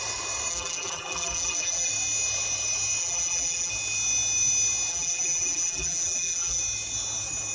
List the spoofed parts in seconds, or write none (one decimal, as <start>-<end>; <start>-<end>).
0.5-1.9; 3.0-3.7; 4.9-6.6